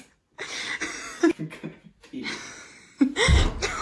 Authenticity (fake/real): real